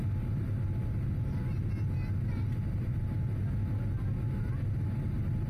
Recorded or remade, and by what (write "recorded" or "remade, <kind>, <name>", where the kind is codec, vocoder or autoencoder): recorded